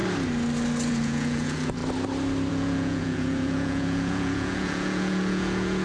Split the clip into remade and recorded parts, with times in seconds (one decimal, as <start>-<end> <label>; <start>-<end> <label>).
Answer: 0.0-0.9 recorded; 0.9-1.8 remade; 1.8-2.5 recorded; 2.5-5.8 remade